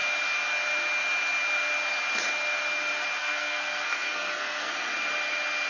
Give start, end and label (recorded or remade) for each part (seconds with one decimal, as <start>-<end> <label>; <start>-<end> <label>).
0.0-3.2 recorded; 3.2-4.7 remade; 4.7-5.7 recorded